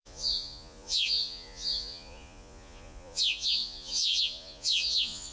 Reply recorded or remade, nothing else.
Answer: remade